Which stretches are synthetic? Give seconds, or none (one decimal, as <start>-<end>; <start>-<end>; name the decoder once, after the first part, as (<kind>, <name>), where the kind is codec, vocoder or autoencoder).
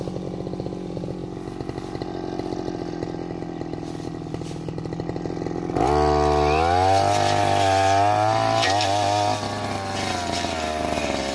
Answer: none